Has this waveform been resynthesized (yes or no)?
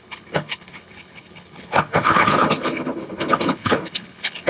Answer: yes